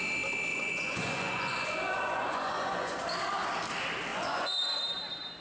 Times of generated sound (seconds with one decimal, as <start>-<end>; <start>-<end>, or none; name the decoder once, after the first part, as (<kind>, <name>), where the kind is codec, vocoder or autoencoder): 0.5-3.0 (vocoder, Vocos); 4.1-4.8